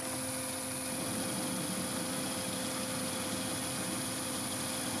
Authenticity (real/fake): real